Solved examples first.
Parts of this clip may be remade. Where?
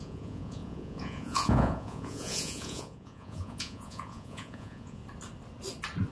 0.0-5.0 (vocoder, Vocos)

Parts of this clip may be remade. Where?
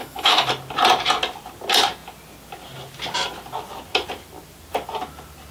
0.0-0.5 (autoencoder, DAC-VAE)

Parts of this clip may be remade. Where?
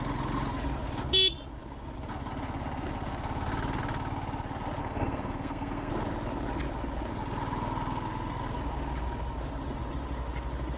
4.8-5.9 (codec, SNAC)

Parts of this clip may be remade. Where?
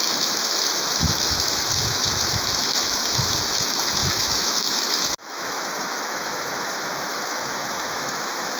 0.0-8.6 (autoencoder, DAC-VAE)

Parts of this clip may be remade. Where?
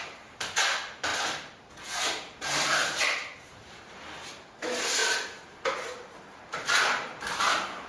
2.8-4.0 (vocoder, BigVGAN v2); 5.0-7.9